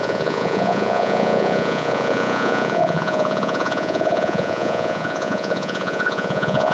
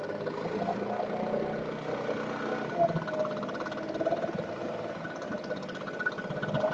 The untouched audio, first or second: second